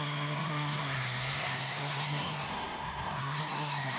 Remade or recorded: remade